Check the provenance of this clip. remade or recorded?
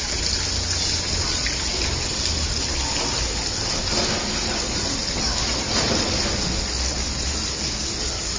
recorded